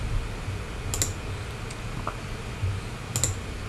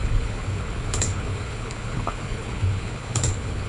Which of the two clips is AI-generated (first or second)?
second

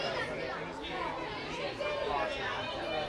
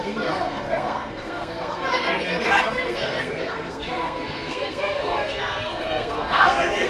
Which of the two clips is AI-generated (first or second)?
second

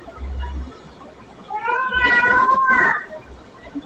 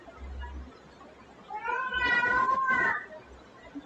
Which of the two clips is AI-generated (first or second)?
first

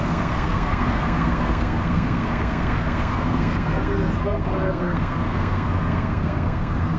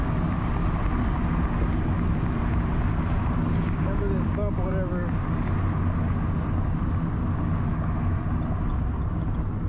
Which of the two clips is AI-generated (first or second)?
first